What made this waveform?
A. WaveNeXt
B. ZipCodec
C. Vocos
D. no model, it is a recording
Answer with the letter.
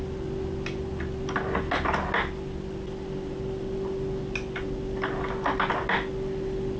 D